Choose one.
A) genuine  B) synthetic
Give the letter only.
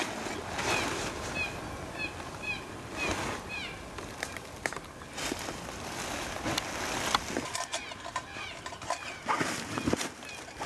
A